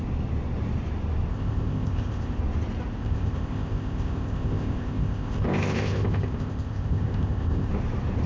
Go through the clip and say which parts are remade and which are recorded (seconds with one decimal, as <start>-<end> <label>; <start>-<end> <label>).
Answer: 0.0-1.3 recorded; 1.3-2.4 remade; 2.4-2.9 recorded; 2.9-7.7 remade; 7.7-8.3 recorded